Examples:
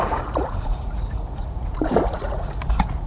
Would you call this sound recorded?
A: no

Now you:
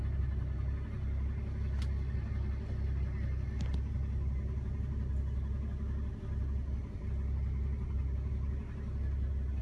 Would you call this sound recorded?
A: yes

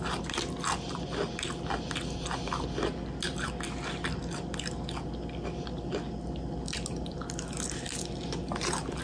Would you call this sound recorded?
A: yes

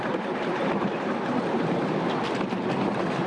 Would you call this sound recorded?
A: yes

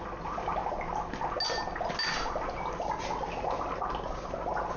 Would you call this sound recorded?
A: yes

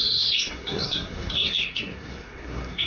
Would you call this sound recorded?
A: no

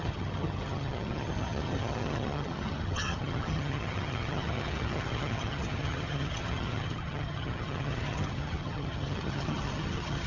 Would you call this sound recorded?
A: no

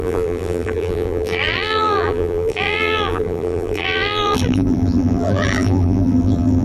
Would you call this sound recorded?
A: no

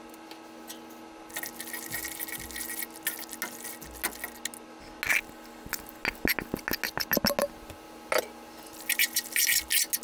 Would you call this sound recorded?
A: yes